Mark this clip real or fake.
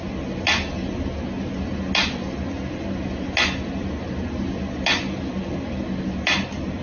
real